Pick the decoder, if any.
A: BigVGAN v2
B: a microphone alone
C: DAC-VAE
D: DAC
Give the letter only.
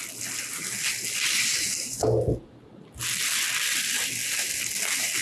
B